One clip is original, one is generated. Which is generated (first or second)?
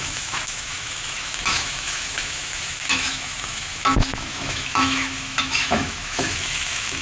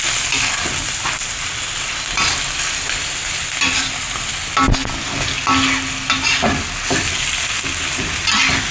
first